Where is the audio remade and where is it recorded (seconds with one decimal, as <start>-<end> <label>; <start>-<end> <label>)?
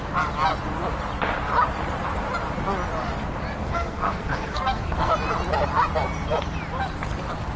0.0-3.6 recorded; 3.6-5.1 remade; 5.1-7.6 recorded